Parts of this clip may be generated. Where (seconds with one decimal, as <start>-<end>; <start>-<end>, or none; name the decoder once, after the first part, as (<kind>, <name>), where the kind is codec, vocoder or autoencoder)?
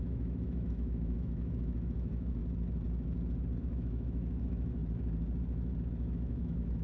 0.0-2.4 (autoencoder, DAC-VAE); 3.6-4.8; 5.9-6.8